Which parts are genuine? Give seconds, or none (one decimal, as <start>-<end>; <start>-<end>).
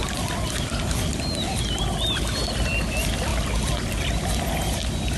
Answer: 0.0-5.2